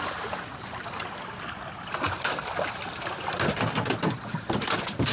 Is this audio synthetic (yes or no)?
no